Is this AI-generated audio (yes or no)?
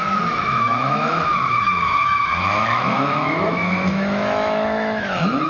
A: yes